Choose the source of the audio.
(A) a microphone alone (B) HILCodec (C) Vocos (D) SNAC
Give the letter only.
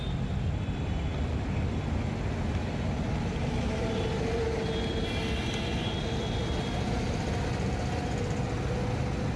A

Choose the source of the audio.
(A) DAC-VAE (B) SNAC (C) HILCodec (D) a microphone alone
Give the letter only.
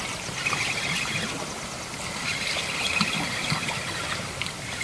D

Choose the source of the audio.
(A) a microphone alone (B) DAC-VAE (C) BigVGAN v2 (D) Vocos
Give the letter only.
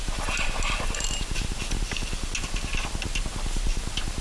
A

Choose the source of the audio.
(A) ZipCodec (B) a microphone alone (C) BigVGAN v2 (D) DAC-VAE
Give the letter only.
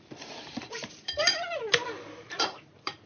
C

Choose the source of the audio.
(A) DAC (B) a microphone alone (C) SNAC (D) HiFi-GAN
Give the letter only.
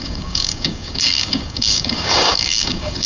A